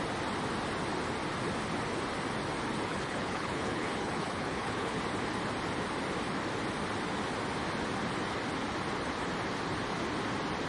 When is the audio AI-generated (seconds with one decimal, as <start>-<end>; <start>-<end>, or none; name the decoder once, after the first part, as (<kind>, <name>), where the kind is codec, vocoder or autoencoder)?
2.9-5.0 (codec, HILCodec)